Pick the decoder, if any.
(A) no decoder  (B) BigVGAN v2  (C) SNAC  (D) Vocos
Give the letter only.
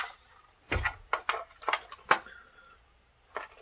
A